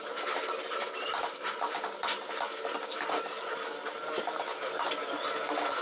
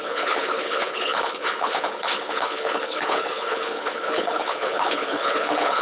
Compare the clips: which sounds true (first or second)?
first